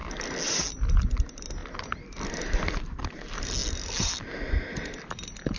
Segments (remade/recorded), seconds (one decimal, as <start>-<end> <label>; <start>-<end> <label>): 0.0-5.6 recorded